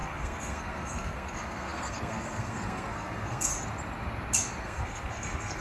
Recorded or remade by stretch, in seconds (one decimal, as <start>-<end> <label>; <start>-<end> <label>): 0.0-3.5 remade; 3.5-4.6 recorded; 4.6-5.6 remade